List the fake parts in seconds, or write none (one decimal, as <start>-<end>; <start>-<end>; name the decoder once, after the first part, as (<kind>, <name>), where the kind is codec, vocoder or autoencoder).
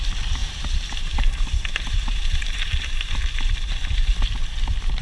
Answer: 0.4-3.2 (vocoder, BigVGAN v2)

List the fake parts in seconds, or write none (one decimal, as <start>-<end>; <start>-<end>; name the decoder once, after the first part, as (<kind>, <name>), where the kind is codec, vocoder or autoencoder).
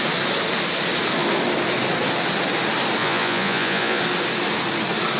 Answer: 3.0-4.0 (vocoder, Vocos)